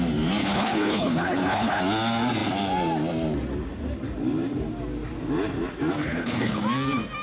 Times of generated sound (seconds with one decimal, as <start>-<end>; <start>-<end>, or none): 0.4-1.8; 6.0-6.6